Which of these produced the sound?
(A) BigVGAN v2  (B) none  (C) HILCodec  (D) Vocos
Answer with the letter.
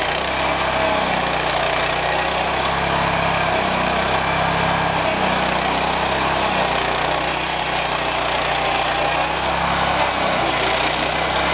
B